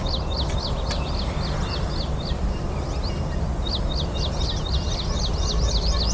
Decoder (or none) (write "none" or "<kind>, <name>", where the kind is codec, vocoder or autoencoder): none